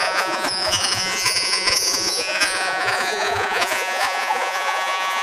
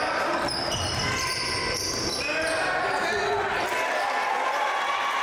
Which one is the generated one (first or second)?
first